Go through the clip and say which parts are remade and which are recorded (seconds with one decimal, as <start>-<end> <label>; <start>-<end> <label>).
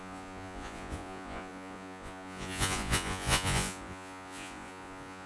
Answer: 0.0-5.3 remade